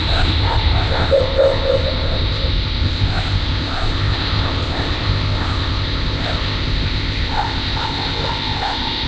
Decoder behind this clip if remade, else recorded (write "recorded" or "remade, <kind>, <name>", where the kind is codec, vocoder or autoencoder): remade, codec, ZipCodec